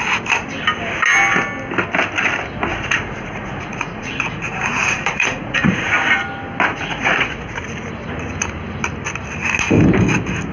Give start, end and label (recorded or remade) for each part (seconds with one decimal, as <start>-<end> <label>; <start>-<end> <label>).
0.0-2.7 recorded; 2.7-5.9 remade; 5.9-6.7 recorded; 6.7-7.6 remade; 7.6-10.5 recorded